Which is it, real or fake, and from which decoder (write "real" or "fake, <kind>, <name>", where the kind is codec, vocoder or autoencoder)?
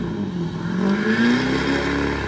real